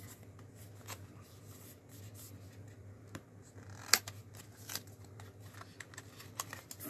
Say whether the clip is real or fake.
real